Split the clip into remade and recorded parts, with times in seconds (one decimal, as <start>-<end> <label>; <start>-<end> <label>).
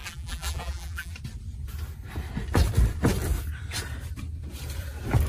0.0-1.1 remade; 1.1-5.3 recorded